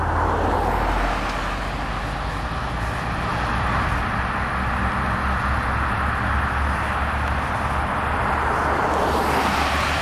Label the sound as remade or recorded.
recorded